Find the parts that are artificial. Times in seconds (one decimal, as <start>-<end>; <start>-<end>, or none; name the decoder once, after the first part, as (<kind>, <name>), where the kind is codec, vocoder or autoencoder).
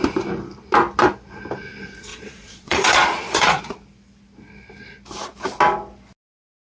2.1-3.6 (vocoder, Vocos)